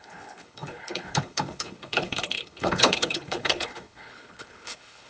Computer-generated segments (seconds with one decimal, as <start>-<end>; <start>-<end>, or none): 0.0-5.1